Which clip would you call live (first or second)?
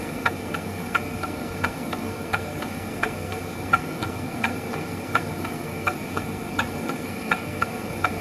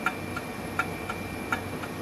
second